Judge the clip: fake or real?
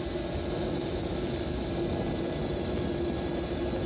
real